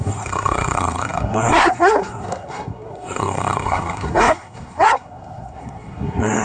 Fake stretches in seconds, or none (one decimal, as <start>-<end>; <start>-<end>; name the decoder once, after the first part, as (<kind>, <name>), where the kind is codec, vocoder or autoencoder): 0.0-6.4 (codec, SNAC)